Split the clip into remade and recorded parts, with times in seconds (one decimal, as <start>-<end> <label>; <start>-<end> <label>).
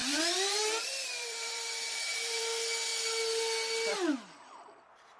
0.0-2.4 remade; 2.4-5.2 recorded